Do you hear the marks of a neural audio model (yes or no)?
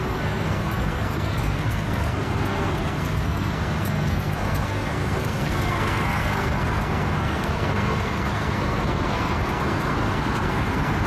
yes